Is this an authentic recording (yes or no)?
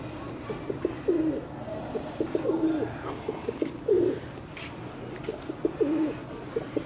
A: yes